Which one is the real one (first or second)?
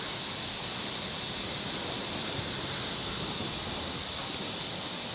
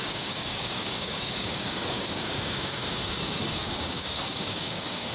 first